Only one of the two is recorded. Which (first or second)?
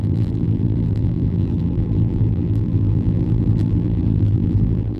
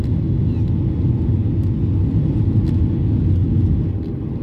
second